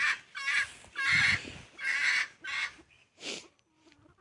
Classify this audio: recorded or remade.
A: recorded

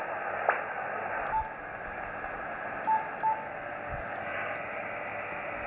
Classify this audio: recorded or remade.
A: recorded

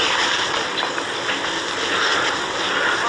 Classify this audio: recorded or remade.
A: recorded